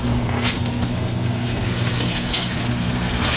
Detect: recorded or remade remade